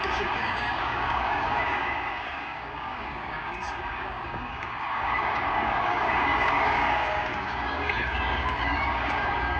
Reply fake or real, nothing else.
fake